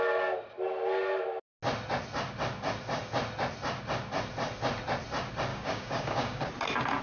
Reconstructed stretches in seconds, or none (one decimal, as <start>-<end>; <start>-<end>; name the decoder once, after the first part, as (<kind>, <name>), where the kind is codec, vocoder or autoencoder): 5.5-6.5 (codec, DAC)

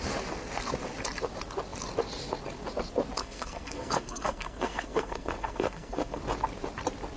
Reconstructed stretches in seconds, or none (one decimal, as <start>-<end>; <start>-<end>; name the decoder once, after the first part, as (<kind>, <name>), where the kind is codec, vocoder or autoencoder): 3.2-6.2 (codec, SNAC)

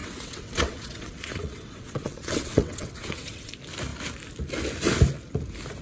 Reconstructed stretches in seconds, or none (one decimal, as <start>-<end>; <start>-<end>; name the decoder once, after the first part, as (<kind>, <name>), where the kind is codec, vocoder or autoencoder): 0.0-3.5 (vocoder, WaveNeXt)

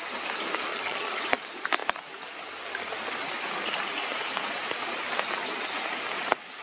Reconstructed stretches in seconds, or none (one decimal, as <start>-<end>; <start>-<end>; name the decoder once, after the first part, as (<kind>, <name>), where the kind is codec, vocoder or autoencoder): 0.7-1.2 (vocoder, HiFi-GAN)